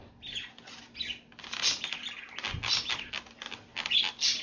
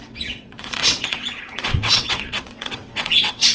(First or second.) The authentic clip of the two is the first